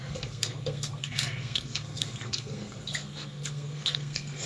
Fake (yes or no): yes